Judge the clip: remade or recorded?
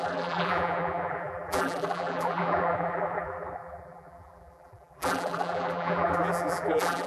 remade